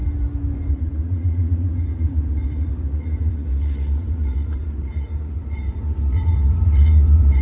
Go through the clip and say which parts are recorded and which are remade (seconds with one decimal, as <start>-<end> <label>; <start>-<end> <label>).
0.0-0.7 recorded; 0.7-7.4 remade